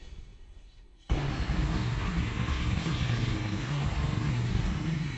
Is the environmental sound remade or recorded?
remade